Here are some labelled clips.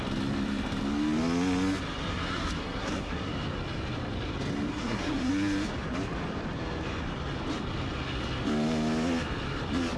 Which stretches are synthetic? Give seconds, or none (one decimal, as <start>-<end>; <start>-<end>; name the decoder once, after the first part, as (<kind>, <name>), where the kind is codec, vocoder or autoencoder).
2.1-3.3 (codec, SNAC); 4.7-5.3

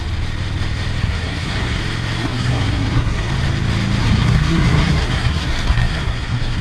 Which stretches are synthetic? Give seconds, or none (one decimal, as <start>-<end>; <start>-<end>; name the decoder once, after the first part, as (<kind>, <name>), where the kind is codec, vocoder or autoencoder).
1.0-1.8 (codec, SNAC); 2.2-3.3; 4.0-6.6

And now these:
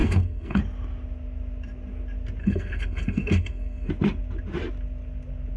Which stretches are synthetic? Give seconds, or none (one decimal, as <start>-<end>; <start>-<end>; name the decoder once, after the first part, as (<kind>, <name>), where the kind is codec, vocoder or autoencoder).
0.0-0.6 (codec, SNAC); 2.4-3.9

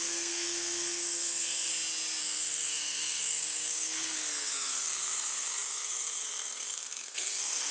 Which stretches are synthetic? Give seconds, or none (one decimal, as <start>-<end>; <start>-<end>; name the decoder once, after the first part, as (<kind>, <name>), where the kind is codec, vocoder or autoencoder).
0.0-1.7 (codec, SNAC); 2.2-7.7

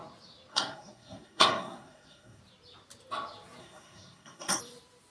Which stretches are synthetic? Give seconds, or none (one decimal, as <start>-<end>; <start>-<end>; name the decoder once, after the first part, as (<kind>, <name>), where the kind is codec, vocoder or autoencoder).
0.5-2.4 (codec, SNAC); 3.6-4.6